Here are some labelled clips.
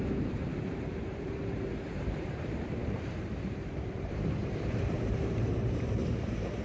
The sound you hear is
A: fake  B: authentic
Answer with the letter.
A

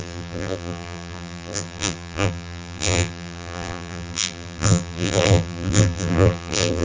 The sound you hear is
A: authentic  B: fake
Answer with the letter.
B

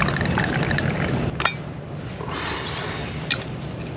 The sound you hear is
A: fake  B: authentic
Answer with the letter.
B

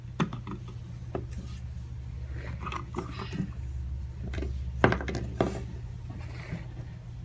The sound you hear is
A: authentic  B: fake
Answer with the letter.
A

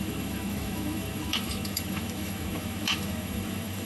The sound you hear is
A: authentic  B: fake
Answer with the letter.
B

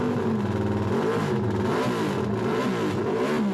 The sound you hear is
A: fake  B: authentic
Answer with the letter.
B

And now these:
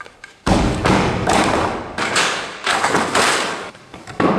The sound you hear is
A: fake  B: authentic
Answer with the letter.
A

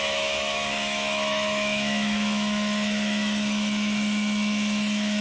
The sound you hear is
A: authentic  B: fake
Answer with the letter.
B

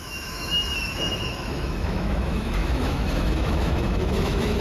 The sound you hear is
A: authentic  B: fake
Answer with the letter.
B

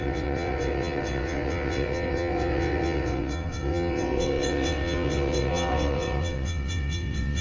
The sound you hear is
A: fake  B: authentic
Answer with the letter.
A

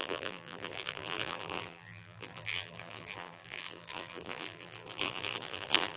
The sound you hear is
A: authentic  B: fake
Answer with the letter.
B